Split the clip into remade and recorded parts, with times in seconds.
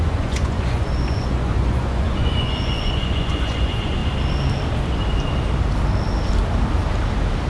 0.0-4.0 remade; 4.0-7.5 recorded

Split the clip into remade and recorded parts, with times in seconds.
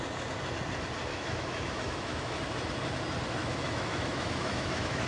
0.0-1.1 recorded; 1.1-2.4 remade; 2.4-3.4 recorded; 3.4-5.1 remade